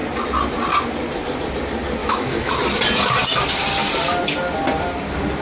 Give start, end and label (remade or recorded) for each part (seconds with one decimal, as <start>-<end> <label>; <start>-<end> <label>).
0.0-2.0 recorded; 2.0-2.5 remade; 2.5-5.4 recorded